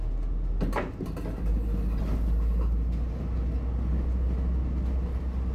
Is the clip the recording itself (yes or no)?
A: yes